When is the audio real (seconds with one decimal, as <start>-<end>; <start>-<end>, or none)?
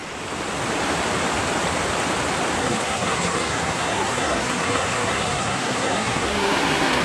0.0-2.6